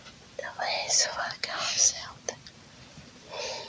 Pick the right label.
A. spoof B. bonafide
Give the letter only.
B